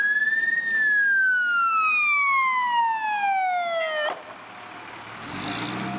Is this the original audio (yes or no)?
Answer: yes